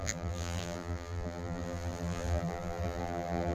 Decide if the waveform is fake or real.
fake